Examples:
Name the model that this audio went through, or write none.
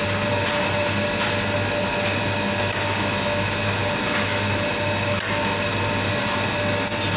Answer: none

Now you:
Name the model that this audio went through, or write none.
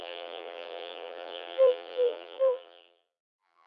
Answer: vocoder, BigVGAN v2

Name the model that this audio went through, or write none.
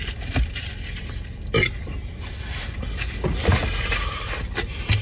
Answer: none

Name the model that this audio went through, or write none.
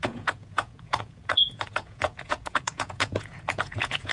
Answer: vocoder, Vocos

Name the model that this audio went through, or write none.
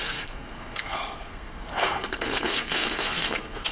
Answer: codec, SNAC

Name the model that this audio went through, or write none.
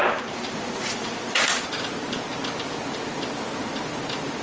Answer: vocoder, BigVGAN v2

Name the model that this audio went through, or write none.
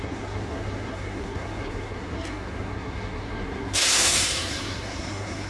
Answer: codec, SNAC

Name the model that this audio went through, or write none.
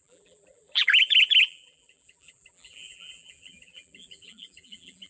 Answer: vocoder, BigVGAN v2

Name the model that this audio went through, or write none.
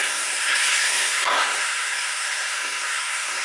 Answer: codec, SNAC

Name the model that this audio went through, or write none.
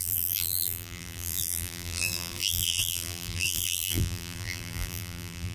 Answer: vocoder, BigVGAN v2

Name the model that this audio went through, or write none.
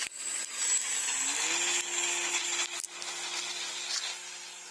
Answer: none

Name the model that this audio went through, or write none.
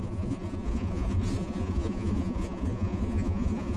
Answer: vocoder, Vocos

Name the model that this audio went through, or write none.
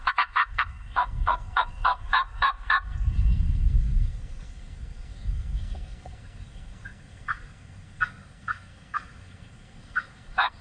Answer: codec, SNAC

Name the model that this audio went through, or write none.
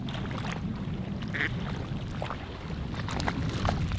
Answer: none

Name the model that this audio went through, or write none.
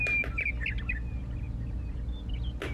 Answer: none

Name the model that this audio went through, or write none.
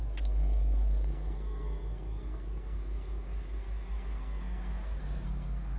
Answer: codec, SNAC